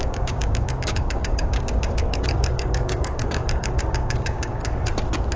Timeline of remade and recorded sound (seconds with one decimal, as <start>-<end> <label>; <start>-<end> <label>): 0.0-4.6 remade; 4.6-5.4 recorded